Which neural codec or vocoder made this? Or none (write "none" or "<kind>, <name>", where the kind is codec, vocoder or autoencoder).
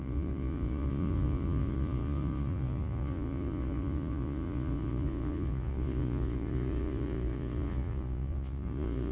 vocoder, Vocos